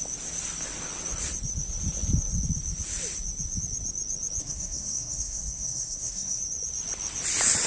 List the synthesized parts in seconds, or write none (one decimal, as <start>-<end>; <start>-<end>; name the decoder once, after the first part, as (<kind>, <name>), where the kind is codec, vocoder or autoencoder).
4.4-6.4 (codec, SNAC)